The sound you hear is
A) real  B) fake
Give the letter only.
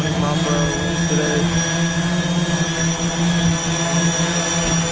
A